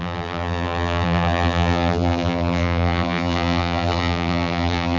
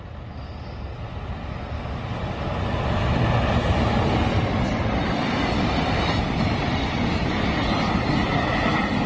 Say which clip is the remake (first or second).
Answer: first